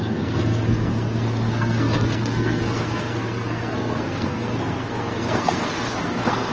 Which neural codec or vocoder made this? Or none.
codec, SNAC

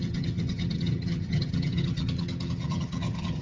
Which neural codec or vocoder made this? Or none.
vocoder, HiFi-GAN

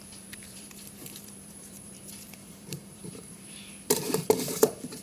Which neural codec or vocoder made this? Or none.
vocoder, BigVGAN v2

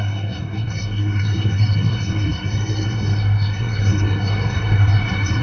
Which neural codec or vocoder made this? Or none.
codec, SNAC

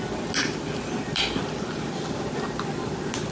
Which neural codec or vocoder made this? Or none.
none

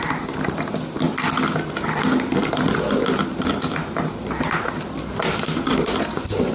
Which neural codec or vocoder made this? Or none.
vocoder, BigVGAN v2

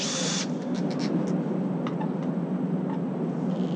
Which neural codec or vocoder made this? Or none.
none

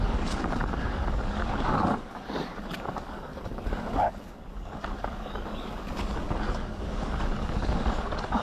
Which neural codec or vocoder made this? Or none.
codec, DAC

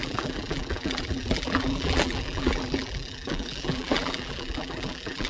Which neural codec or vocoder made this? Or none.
vocoder, BigVGAN v2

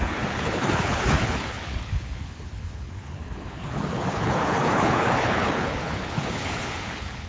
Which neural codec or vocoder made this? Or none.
codec, HILCodec